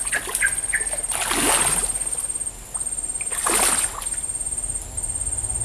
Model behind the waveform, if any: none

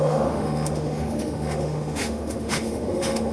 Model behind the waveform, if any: autoencoder, DAC-VAE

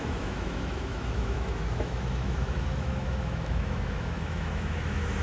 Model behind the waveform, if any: autoencoder, DAC-VAE